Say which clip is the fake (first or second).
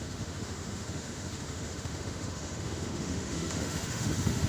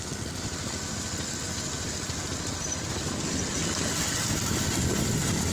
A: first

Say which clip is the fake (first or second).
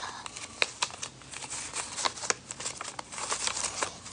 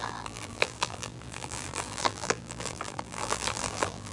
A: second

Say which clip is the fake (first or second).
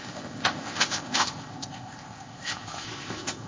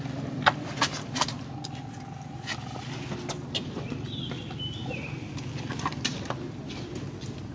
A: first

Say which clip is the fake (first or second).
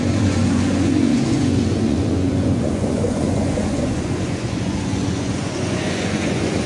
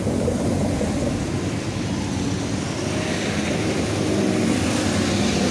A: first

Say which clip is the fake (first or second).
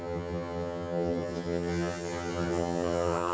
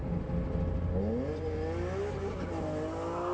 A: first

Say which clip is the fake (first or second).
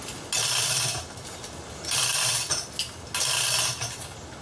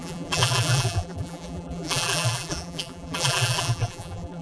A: second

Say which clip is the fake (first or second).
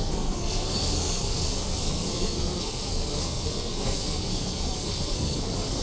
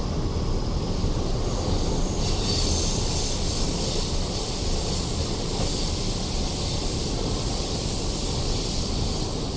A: first